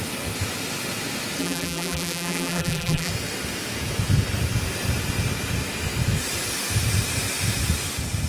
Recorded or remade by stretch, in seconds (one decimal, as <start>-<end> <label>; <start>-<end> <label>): 0.0-1.4 recorded; 1.4-3.1 remade; 3.1-8.3 recorded